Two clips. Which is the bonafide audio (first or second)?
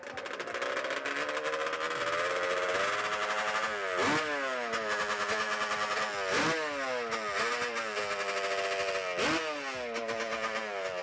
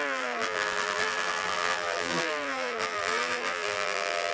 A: first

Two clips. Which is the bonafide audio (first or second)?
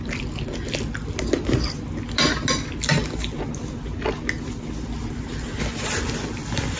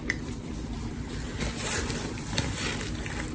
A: first